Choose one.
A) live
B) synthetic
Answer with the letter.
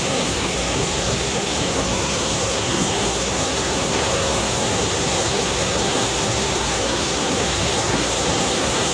B